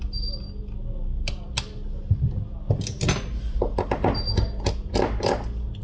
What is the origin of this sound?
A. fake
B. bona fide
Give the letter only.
B